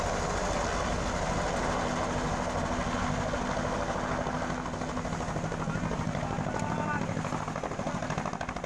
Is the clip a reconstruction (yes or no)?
no